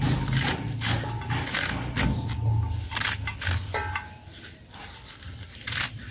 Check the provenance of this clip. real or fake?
real